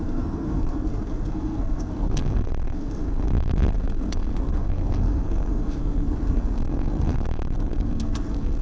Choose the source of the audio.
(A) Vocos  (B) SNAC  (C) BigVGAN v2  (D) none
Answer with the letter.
B